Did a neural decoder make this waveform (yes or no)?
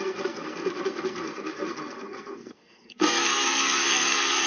yes